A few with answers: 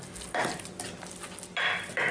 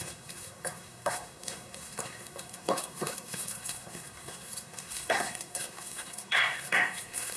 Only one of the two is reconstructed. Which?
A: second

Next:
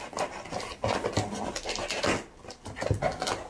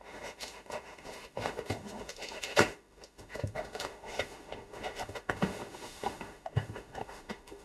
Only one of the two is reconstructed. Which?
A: second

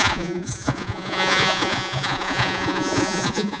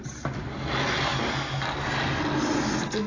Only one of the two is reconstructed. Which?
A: first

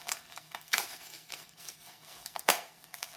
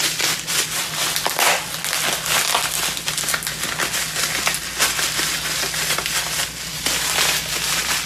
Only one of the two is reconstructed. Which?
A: first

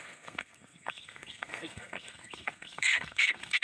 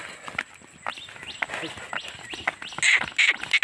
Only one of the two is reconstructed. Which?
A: first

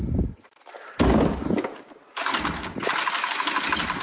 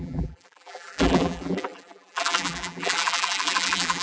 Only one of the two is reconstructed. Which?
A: second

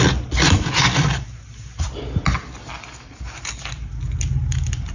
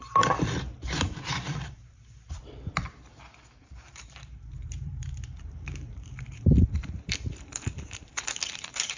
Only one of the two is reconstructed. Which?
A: second